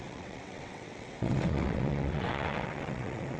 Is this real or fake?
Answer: fake